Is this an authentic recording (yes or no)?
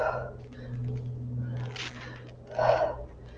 yes